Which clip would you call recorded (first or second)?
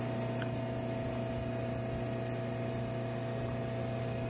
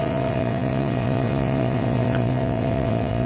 first